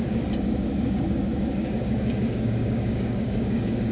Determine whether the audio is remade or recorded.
remade